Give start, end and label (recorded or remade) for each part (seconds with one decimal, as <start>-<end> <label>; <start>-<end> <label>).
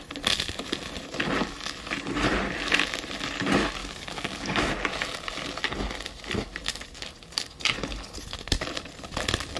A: 0.0-3.8 recorded; 3.8-4.7 remade; 4.7-9.6 recorded